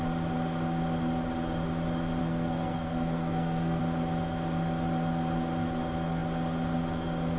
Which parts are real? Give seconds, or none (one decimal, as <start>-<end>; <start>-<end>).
0.0-2.2; 3.8-7.4